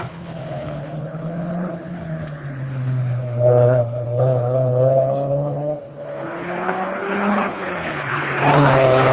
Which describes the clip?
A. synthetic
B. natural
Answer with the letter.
A